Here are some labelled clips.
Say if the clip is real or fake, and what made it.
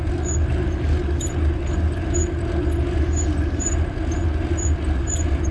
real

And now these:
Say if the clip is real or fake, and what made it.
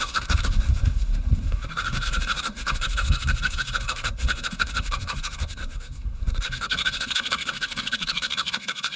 fake, codec, SNAC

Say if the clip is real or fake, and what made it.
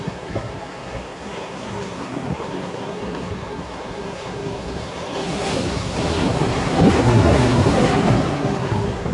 fake, codec, SNAC